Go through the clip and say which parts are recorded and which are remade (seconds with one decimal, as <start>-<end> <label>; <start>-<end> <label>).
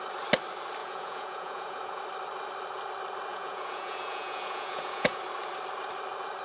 0.0-0.8 recorded; 0.8-2.0 remade; 2.0-3.3 recorded; 3.3-5.2 remade; 5.2-6.4 recorded